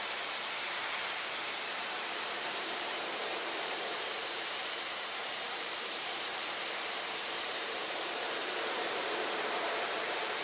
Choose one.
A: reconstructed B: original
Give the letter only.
A